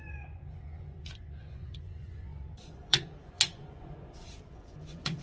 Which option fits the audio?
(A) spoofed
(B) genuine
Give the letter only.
A